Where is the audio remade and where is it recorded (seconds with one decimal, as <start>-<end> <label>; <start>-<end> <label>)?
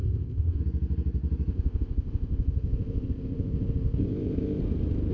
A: 0.0-0.6 remade; 0.6-1.5 recorded; 1.5-4.6 remade; 4.6-5.1 recorded